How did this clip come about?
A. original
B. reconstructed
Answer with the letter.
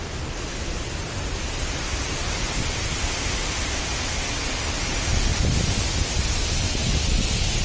A